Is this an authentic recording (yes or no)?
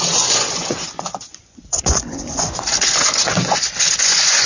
no